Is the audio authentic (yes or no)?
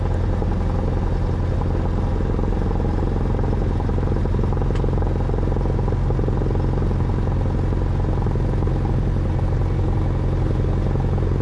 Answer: yes